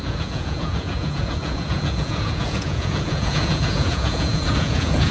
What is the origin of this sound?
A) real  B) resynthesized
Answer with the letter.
B